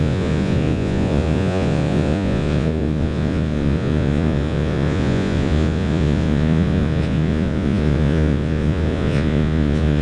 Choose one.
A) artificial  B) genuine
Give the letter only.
A